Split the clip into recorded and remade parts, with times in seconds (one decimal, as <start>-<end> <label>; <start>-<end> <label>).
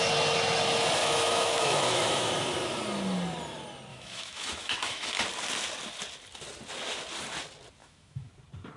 0.0-1.0 recorded; 1.0-2.3 remade; 2.3-3.9 recorded; 3.9-5.2 remade; 5.2-7.8 recorded; 7.8-8.3 remade; 8.3-8.8 recorded